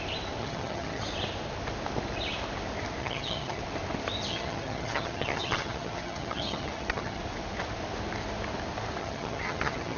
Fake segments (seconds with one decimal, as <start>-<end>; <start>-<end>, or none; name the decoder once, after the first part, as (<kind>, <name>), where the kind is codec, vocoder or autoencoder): 0.4-1.0 (vocoder, HiFi-GAN); 3.0-3.6; 4.3-7.2; 9.0-10.0